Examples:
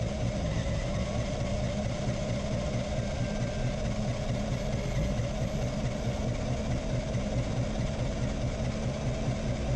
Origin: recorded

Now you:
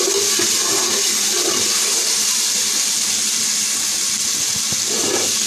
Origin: recorded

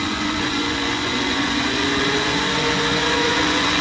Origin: remade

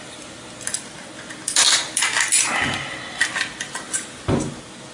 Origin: recorded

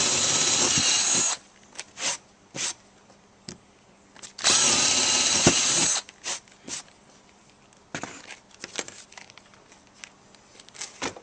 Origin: recorded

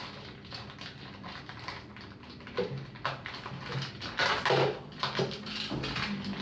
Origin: recorded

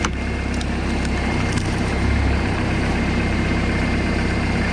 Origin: remade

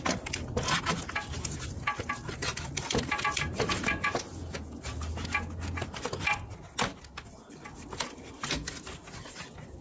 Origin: recorded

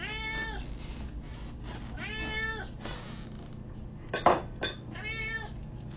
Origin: recorded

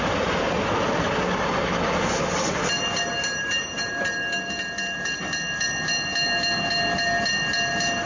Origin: recorded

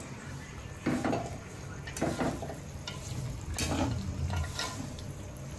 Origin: recorded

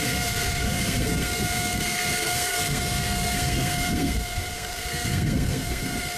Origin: remade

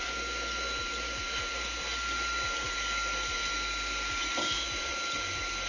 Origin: recorded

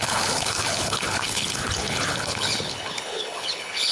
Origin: remade